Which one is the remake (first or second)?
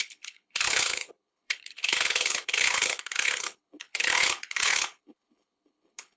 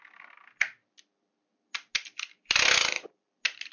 first